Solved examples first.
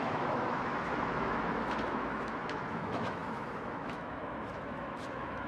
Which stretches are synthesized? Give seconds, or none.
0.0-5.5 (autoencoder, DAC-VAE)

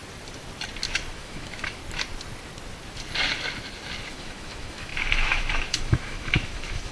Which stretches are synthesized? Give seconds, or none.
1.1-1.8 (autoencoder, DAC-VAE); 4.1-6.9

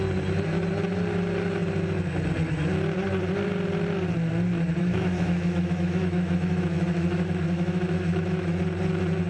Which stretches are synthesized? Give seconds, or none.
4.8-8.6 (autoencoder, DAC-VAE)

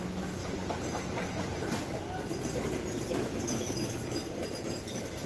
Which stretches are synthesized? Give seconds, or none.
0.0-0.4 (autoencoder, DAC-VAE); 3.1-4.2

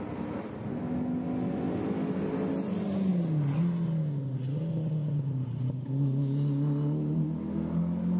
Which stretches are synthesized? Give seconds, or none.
none

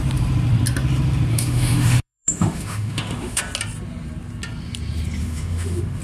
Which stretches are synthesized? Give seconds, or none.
1.3-3.4 (autoencoder, DAC-VAE); 5.2-6.0

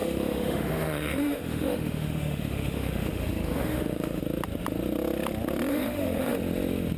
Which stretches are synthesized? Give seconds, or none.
0.0-4.2 (autoencoder, DAC-VAE); 5.7-6.4

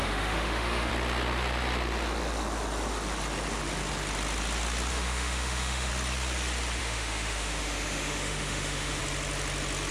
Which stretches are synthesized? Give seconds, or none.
0.0-0.9 (autoencoder, DAC-VAE); 4.9-5.9; 6.8-9.0